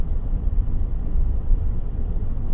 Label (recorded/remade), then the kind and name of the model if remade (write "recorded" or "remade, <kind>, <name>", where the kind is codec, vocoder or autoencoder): remade, vocoder, WaveNeXt